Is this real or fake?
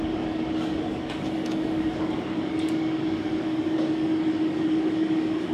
fake